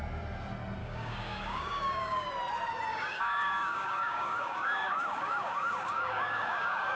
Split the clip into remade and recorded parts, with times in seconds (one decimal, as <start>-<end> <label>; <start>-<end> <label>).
0.0-0.8 recorded; 0.8-2.3 remade; 2.3-2.9 recorded; 2.9-7.0 remade